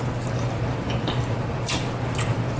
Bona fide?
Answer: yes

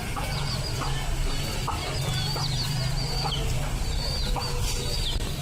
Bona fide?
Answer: yes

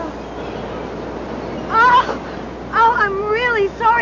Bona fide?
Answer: yes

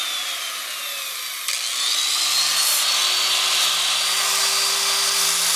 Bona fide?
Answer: yes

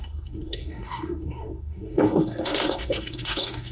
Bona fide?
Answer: no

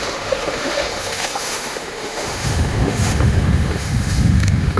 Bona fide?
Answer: no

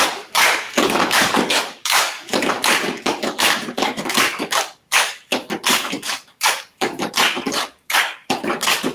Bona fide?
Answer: no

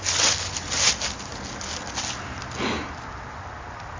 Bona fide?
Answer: yes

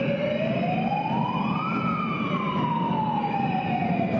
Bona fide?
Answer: yes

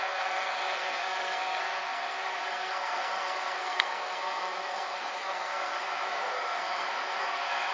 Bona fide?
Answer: no